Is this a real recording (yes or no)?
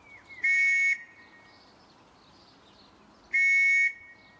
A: yes